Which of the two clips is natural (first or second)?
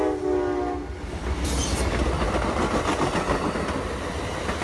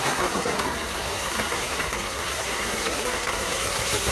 first